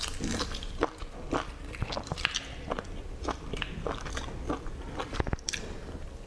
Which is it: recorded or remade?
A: recorded